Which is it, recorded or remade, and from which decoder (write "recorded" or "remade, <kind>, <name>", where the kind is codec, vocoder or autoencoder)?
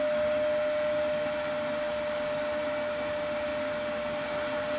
recorded